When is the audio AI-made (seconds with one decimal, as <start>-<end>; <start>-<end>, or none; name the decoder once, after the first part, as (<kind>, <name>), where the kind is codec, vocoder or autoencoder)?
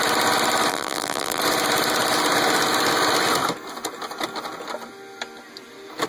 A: 0.7-1.4 (vocoder, BigVGAN v2)